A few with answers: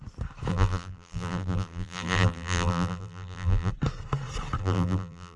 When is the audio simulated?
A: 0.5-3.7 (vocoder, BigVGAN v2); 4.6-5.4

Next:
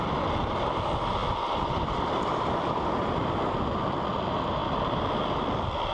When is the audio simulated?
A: 1.2-3.6 (vocoder, BigVGAN v2); 4.6-5.1

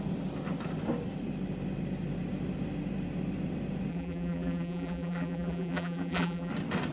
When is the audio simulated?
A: 3.9-6.5 (vocoder, BigVGAN v2)